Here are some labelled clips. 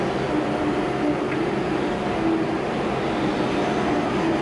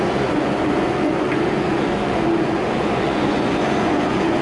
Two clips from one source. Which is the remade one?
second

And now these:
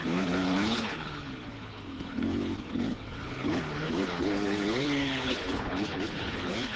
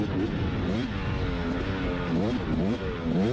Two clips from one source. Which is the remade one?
first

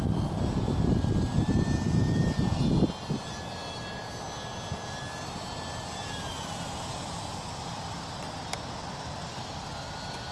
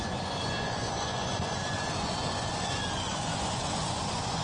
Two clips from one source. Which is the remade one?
second